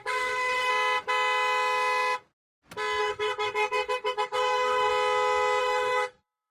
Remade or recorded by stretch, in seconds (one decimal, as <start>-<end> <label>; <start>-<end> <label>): 0.0-0.7 remade; 0.7-3.0 recorded; 3.0-4.9 remade; 4.9-5.6 recorded; 5.6-6.5 remade